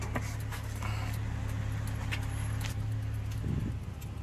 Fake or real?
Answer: real